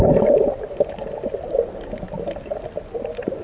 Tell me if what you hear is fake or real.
real